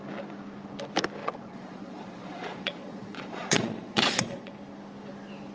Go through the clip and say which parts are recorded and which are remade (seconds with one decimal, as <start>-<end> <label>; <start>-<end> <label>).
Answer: 0.0-1.2 recorded; 1.2-4.5 remade; 4.5-5.5 recorded